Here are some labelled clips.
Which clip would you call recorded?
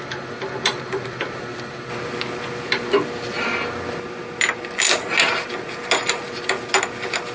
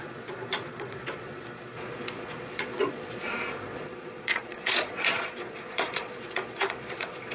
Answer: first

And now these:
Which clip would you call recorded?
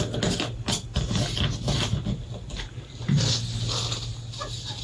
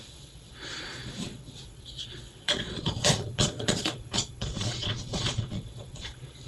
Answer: first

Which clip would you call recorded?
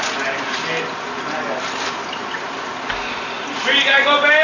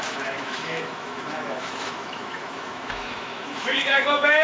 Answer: first